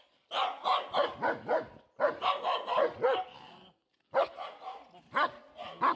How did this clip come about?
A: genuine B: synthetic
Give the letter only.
A